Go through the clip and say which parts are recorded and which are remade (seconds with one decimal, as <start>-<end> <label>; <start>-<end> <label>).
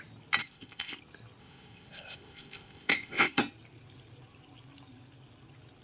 0.0-0.4 recorded; 0.4-1.0 remade; 1.0-1.4 recorded; 1.4-3.4 remade; 3.4-5.8 recorded